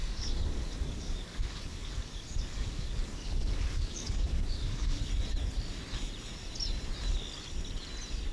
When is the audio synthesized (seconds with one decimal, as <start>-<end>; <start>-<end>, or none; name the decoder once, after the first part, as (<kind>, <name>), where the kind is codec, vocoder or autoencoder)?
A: 0.0-5.0 (codec, DAC)